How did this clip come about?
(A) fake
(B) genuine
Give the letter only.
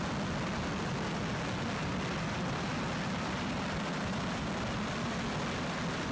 B